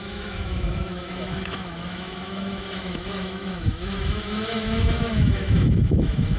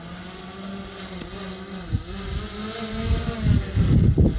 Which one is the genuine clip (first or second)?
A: second